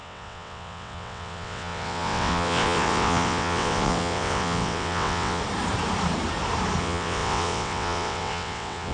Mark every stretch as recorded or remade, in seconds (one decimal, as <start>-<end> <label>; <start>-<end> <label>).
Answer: 0.0-5.4 remade; 5.4-6.8 recorded; 6.8-8.9 remade